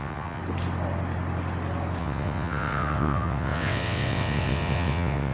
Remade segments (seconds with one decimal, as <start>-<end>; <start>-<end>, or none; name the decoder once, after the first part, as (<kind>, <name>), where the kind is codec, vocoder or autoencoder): 0.0-0.4 (vocoder, WaveNeXt); 2.0-5.3

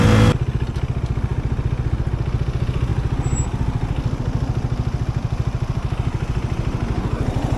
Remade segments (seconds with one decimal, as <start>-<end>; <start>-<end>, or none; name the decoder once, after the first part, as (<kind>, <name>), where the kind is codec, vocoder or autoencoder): none

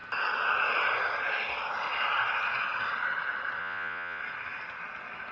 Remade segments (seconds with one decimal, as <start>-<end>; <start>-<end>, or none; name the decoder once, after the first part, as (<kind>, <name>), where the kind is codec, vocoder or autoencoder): 3.6-4.2 (vocoder, Vocos)

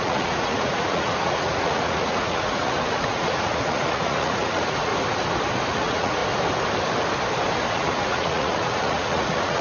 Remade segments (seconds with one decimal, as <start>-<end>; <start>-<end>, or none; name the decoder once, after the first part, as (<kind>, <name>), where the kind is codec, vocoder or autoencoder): 0.0-4.9 (vocoder, Vocos); 5.7-6.2; 7.7-9.6

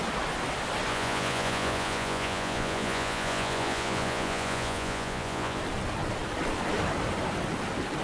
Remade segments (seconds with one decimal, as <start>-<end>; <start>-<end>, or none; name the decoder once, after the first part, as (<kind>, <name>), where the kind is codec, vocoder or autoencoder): 0.9-5.6 (vocoder, Vocos)

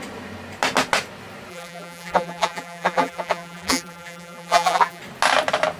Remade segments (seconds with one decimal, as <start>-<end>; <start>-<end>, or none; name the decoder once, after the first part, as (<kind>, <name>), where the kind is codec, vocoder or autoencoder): 1.5-5.0 (vocoder, BigVGAN v2)

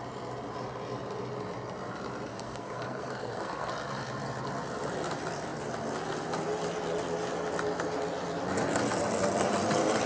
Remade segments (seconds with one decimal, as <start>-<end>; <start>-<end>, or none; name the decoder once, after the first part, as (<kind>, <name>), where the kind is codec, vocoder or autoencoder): 2.3-3.7 (codec, SNAC)